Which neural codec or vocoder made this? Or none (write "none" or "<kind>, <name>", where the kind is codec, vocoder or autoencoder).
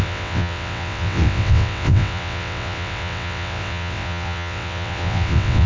vocoder, WaveNeXt